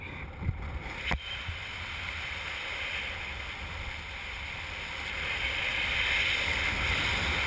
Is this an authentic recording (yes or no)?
yes